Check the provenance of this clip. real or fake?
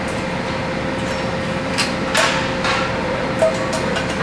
real